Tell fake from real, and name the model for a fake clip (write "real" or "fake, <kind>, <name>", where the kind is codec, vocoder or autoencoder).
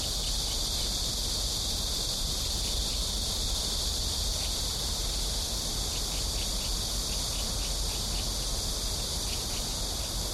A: real